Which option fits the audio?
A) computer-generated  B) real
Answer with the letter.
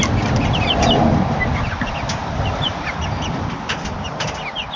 B